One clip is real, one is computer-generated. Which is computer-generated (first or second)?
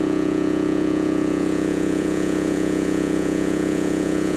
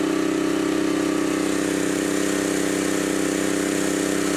first